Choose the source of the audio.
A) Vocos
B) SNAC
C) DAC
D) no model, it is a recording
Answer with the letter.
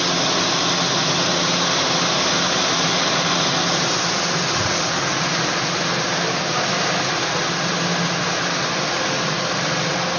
D